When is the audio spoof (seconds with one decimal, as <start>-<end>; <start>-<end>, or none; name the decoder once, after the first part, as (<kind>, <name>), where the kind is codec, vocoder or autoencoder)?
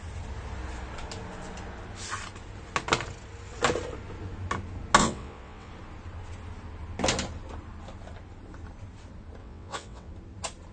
5.0-5.7 (vocoder, WaveNeXt); 9.4-10.1